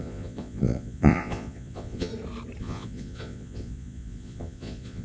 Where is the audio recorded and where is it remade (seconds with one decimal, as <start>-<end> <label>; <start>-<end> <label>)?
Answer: 0.0-2.1 remade; 2.1-2.6 recorded; 2.6-5.0 remade